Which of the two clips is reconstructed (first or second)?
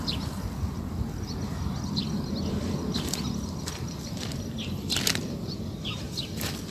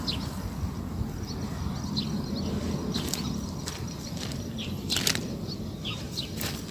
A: first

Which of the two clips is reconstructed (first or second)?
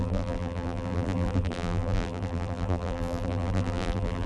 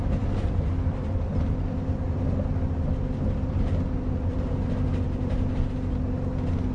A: first